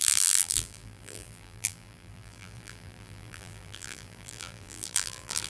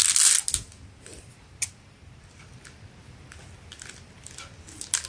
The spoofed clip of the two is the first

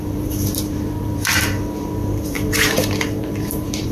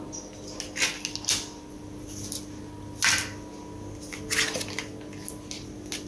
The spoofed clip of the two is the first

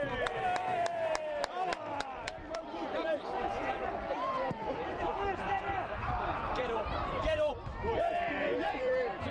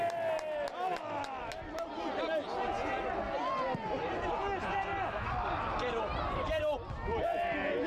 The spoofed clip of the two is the first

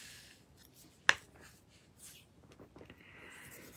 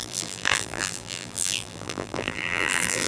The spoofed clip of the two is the second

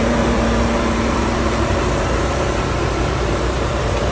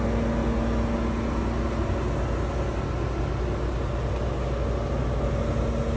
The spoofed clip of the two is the first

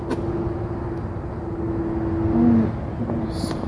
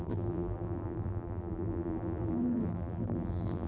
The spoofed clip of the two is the second